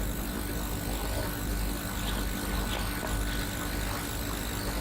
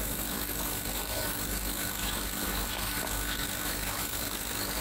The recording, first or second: first